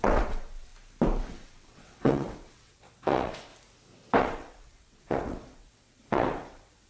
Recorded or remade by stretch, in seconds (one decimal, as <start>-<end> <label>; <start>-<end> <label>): 0.0-0.7 remade; 0.7-1.3 recorded; 1.3-3.5 remade; 3.5-4.2 recorded; 4.2-6.9 remade